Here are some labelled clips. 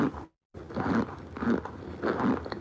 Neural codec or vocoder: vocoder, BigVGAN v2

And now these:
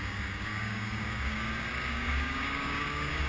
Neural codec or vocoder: codec, DAC